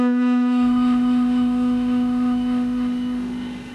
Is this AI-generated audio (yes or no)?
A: yes